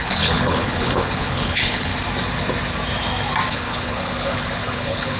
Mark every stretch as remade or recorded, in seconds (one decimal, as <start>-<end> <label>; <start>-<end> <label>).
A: 0.0-1.9 remade; 1.9-3.5 recorded; 3.5-5.2 remade